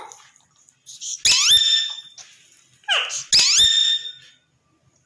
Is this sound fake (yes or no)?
no